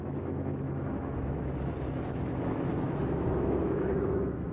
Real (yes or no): no